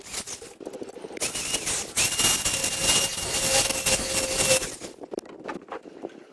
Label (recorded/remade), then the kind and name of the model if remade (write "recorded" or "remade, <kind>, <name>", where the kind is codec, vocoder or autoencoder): recorded